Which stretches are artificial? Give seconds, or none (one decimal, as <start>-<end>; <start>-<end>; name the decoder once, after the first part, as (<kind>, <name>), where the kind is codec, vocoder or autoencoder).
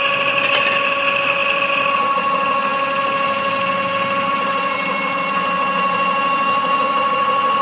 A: 1.4-1.9 (vocoder, BigVGAN v2); 2.7-4.3